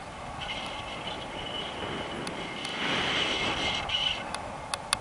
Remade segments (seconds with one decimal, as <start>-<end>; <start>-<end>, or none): none